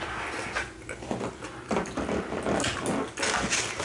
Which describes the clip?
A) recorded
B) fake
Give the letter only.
A